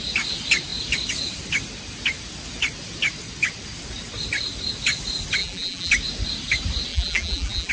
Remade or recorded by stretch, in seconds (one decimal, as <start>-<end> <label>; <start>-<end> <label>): 0.0-5.4 recorded; 5.4-5.9 remade; 5.9-6.9 recorded; 6.9-7.7 remade